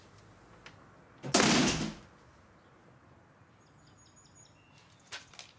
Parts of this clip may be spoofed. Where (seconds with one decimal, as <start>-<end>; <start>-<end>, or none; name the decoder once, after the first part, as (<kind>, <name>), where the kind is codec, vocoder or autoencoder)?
none